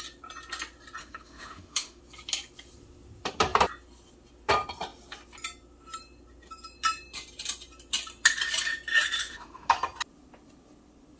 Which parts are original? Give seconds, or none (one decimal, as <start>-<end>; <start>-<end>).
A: 0.0-1.0; 2.0-9.2; 9.7-11.2